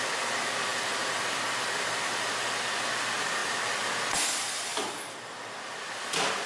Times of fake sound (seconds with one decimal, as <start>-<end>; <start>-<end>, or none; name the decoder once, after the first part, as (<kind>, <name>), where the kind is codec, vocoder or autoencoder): 0.7-1.2 (vocoder, BigVGAN v2); 3.4-3.9